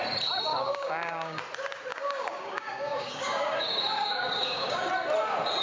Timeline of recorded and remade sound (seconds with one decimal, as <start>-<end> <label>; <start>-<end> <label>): 0.0-0.5 recorded; 0.5-1.4 remade; 1.4-1.9 recorded; 1.9-4.9 remade; 4.9-5.6 recorded